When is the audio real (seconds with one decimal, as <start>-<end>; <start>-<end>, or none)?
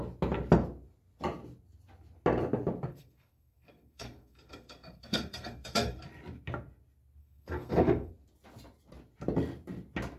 0.0-2.9; 6.0-7.2; 8.1-10.2